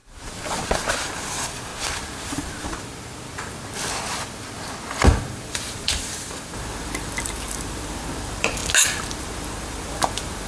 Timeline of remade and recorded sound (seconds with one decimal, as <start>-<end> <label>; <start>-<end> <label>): 0.0-0.9 recorded; 0.9-1.7 remade; 1.7-4.9 recorded; 4.9-8.6 remade; 8.6-9.2 recorded; 9.2-10.5 remade